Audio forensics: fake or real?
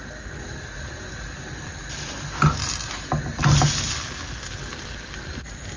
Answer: real